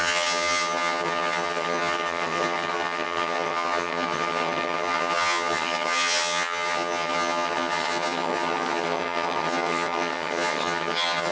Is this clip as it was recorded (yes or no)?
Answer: no